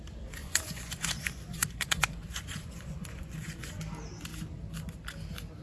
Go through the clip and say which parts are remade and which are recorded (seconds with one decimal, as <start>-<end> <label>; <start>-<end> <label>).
0.0-0.4 recorded; 0.4-3.8 remade; 3.8-5.6 recorded